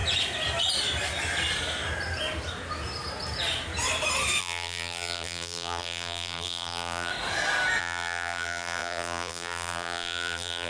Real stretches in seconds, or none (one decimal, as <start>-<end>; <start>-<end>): 0.0-4.4; 7.1-7.8